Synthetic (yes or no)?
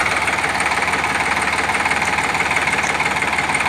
yes